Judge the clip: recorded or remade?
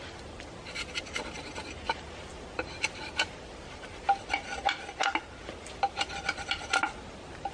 recorded